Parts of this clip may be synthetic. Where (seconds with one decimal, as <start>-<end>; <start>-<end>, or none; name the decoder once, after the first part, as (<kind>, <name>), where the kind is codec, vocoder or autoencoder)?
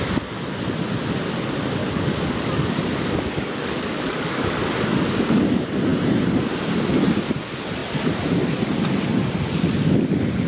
1.8-4.7 (codec, DAC)